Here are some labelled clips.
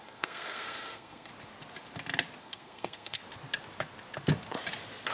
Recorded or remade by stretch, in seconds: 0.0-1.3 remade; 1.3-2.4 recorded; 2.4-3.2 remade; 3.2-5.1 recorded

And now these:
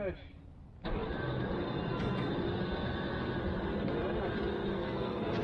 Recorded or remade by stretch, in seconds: 0.0-4.7 recorded; 4.7-5.4 remade

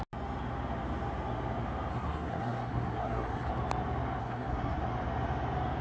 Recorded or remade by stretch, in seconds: 0.0-1.9 recorded; 1.9-3.5 remade; 3.5-4.2 recorded; 4.2-4.8 remade; 4.8-5.8 recorded

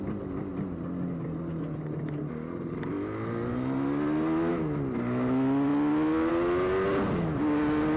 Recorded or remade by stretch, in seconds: 0.0-8.0 recorded

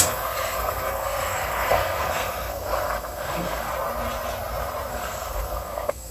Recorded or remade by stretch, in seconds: 0.0-3.7 remade; 3.7-4.9 recorded; 4.9-6.1 remade